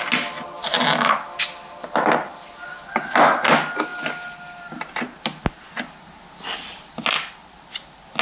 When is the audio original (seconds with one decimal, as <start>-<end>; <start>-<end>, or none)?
0.0-8.2